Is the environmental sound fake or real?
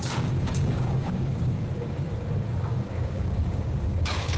fake